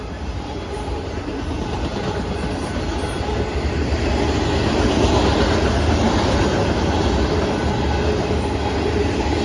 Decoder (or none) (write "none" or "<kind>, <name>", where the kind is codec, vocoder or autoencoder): none